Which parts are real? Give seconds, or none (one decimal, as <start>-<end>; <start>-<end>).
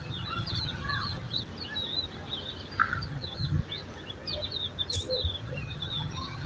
1.5-2.9; 3.6-5.4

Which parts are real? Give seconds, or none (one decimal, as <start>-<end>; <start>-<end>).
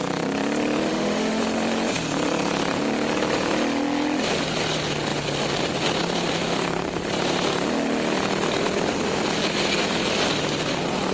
0.0-0.9; 1.4-11.1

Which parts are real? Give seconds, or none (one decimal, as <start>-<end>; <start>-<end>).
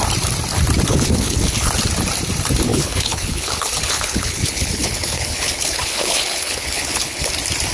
0.0-0.9; 1.7-2.7; 7.3-7.7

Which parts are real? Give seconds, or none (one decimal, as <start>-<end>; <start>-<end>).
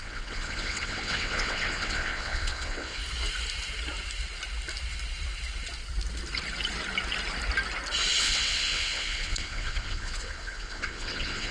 3.0-8.2